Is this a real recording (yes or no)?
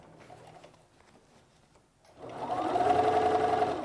yes